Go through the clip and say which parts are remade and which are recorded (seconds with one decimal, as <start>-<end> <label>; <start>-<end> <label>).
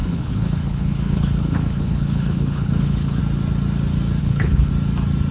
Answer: 0.0-3.2 remade; 3.2-4.2 recorded; 4.2-4.7 remade; 4.7-5.3 recorded